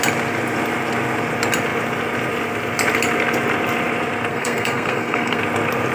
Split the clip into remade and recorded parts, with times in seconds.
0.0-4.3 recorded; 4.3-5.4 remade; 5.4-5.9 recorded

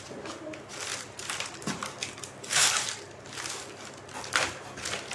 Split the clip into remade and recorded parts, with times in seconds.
0.0-0.9 recorded; 0.9-1.5 remade; 1.5-5.1 recorded

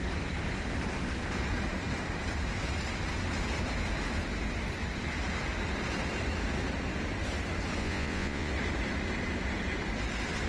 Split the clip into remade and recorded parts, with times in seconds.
0.0-7.8 recorded; 7.8-8.5 remade; 8.5-10.5 recorded